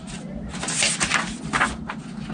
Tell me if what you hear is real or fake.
real